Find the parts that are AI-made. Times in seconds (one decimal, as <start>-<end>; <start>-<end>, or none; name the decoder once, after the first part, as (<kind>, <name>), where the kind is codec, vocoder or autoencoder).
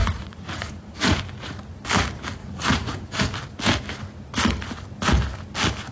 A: 0.0-1.2 (vocoder, Vocos); 2.4-3.2